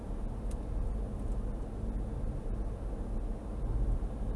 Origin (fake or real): real